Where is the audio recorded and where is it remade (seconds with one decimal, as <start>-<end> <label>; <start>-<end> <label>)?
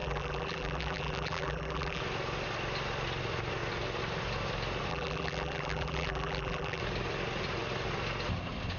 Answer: 0.0-2.0 remade; 2.0-4.9 recorded; 4.9-6.8 remade; 6.8-8.8 recorded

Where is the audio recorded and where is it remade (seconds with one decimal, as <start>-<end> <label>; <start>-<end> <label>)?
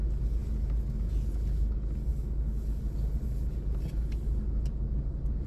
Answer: 0.0-5.5 recorded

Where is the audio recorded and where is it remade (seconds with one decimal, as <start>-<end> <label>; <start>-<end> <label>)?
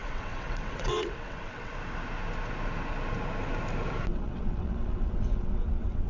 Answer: 0.0-1.7 remade; 1.7-4.1 recorded; 4.1-6.1 remade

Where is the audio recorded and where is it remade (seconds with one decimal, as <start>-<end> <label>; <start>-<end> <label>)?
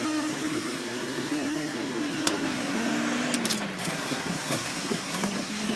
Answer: 0.0-2.9 remade; 2.9-3.8 recorded; 3.8-5.8 remade